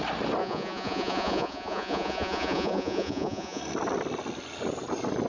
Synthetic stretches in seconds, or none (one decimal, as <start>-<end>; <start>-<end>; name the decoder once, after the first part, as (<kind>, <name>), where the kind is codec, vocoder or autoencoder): 0.4-3.6 (vocoder, Vocos)